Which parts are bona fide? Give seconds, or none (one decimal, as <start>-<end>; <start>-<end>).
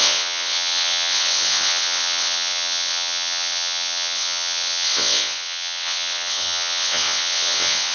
none